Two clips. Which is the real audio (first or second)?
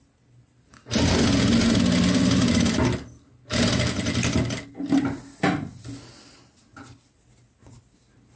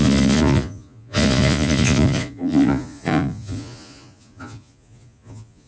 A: first